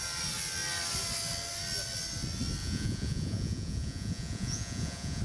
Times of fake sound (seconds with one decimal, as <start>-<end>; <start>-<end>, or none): 2.6-5.2